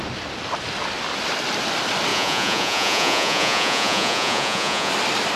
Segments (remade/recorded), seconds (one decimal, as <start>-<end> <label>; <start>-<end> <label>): 0.0-2.1 recorded; 2.1-4.9 remade; 4.9-5.4 recorded